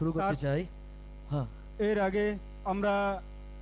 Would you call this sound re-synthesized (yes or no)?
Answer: no